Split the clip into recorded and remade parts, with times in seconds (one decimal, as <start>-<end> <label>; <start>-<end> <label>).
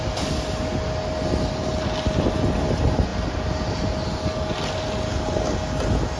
0.0-6.2 recorded